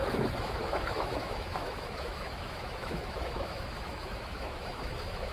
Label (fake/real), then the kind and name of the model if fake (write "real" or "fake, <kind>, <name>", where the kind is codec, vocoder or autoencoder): fake, autoencoder, DAC-VAE